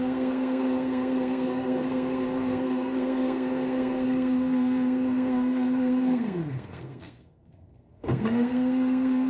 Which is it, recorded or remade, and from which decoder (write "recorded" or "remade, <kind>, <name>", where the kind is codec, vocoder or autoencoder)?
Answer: remade, codec, SNAC